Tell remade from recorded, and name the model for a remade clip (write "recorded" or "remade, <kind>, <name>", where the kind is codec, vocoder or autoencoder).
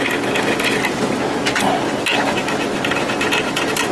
recorded